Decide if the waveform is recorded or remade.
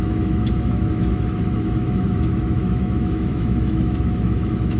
remade